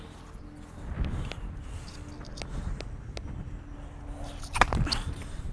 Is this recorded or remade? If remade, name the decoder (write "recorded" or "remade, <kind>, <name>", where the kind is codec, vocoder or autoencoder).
recorded